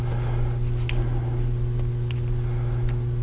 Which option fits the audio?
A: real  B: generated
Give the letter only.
A